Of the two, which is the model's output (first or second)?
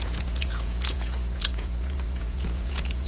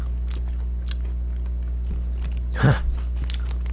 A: first